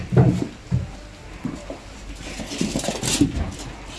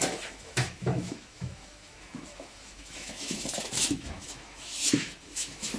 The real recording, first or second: first